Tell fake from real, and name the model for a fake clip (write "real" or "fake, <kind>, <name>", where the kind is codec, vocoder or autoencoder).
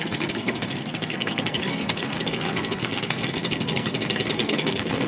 fake, codec, SNAC